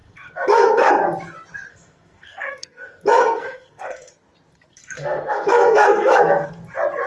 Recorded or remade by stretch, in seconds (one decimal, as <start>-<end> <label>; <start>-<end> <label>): 0.0-0.9 remade; 0.9-1.7 recorded; 1.7-4.1 remade; 4.1-4.7 recorded; 4.7-6.5 remade; 6.5-7.1 recorded